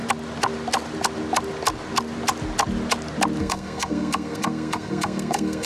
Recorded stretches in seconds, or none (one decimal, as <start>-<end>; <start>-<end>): 0.0-3.4